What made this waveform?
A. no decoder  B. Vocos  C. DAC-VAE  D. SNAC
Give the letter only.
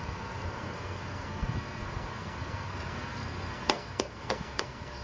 D